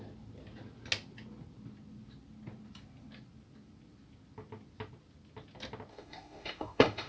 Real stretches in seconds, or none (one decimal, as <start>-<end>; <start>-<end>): 0.0-5.9